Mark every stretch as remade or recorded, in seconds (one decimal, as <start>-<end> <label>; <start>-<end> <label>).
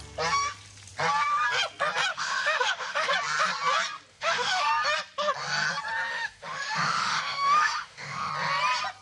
0.0-2.1 recorded; 2.1-3.1 remade; 3.1-4.1 recorded; 4.1-4.7 remade; 4.7-6.1 recorded; 6.1-8.3 remade; 8.3-9.0 recorded